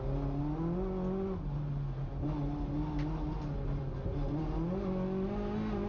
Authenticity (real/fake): real